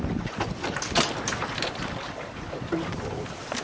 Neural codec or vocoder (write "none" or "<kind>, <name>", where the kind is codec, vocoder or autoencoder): none